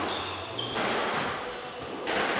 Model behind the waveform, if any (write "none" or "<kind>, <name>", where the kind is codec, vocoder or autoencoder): none